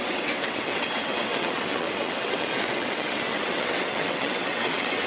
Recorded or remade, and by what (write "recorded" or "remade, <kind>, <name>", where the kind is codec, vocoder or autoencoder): remade, vocoder, WaveNeXt